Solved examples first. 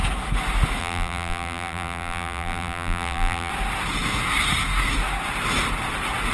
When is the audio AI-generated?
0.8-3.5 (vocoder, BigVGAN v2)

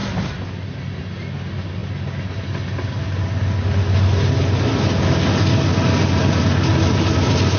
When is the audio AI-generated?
none

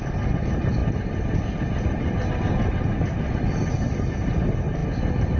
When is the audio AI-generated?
none

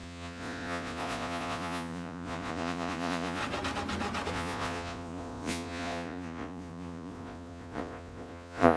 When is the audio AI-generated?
0.0-3.4 (vocoder, Vocos); 4.3-8.8

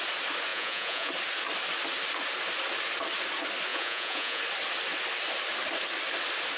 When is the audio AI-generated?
0.5-1.1 (vocoder, Vocos); 3.7-4.4

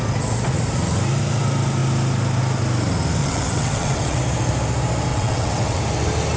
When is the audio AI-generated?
3.2-4.2 (vocoder, WaveNeXt); 5.1-5.8

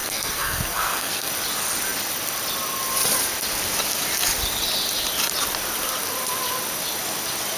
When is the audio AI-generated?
0.0-1.3 (codec, SNAC)

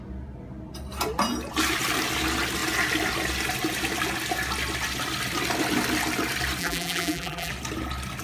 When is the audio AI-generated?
6.6-7.5 (vocoder, BigVGAN v2)